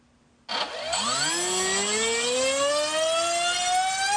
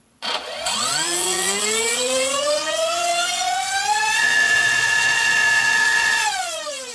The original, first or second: first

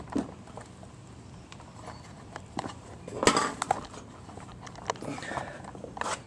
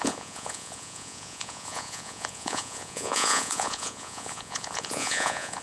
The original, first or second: first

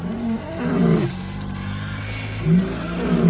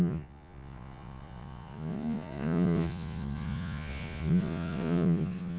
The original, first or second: first